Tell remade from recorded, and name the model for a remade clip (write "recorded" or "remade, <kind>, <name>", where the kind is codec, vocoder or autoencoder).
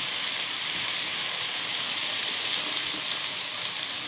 recorded